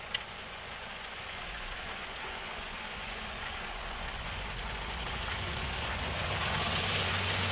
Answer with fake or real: fake